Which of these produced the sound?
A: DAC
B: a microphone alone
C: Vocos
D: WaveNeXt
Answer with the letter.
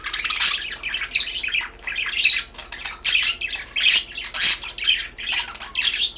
B